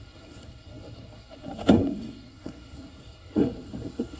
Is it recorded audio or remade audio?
remade